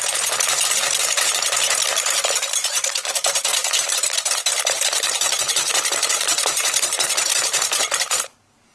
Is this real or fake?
fake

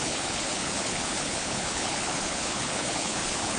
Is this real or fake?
fake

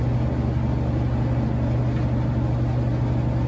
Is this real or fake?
real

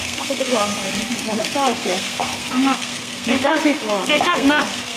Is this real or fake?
fake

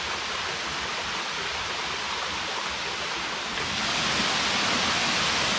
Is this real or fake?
real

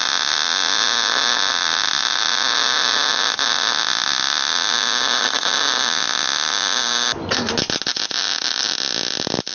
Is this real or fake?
real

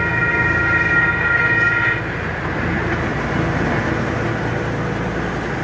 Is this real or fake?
real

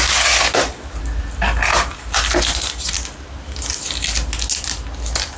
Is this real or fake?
real